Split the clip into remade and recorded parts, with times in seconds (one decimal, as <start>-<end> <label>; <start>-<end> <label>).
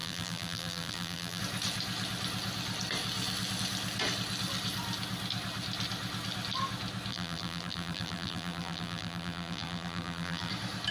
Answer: 0.0-1.4 remade; 1.4-7.1 recorded; 7.1-10.5 remade; 10.5-10.9 recorded